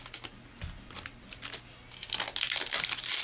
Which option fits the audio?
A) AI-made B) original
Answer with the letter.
B